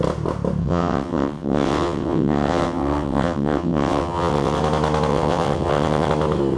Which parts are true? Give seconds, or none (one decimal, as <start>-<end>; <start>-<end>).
0.0-0.6; 4.6-5.1; 6.1-6.6